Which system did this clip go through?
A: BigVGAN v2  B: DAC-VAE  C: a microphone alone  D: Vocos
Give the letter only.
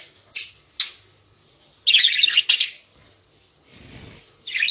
C